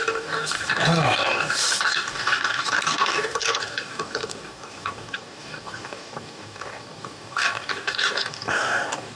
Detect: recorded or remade remade